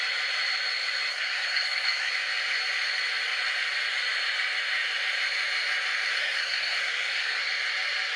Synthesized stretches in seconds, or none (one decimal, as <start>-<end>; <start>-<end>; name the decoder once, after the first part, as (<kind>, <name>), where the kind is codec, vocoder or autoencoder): 1.1-2.1 (codec, SNAC); 6.1-7.4